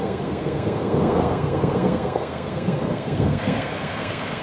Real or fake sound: fake